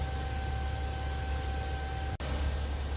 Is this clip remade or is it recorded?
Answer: recorded